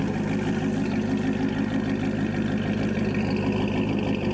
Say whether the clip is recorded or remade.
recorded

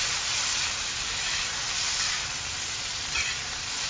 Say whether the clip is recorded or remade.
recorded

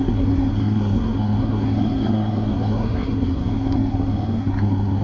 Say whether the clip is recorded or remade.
remade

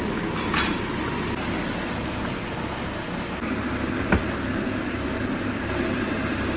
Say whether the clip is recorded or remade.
recorded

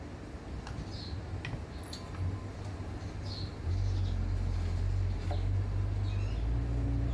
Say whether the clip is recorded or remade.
recorded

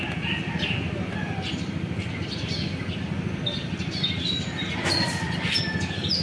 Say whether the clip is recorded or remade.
recorded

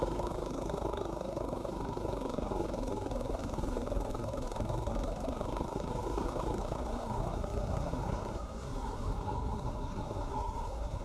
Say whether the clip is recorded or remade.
remade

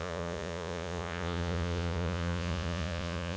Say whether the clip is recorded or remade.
remade